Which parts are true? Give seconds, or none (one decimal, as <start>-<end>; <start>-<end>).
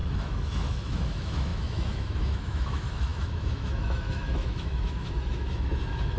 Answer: none